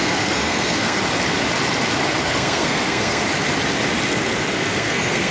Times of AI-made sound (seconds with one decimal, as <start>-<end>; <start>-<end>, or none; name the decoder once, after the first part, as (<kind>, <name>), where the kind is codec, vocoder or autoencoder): 0.0-1.0 (codec, SNAC); 2.2-3.2; 4.5-5.3